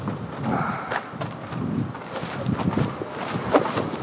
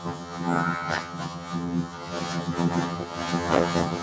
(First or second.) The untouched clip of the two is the first